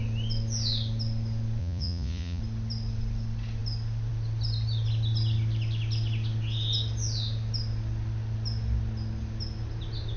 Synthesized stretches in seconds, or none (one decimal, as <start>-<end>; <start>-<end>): 1.6-2.4